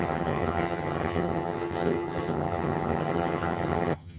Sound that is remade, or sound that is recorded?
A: remade